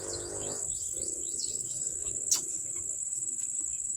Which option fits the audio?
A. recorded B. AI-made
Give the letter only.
B